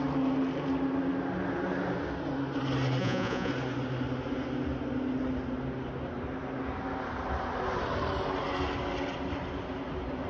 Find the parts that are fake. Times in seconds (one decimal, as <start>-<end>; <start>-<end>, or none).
3.0-3.5